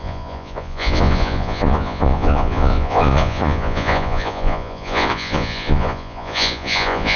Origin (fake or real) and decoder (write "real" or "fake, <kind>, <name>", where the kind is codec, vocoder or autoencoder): fake, vocoder, Vocos